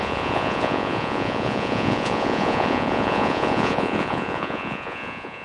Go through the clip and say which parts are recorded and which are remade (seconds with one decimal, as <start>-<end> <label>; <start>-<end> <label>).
0.0-5.4 remade

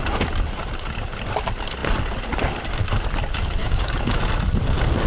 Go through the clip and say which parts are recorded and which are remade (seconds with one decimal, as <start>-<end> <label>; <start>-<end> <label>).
0.0-3.6 recorded; 3.6-4.2 remade; 4.2-5.1 recorded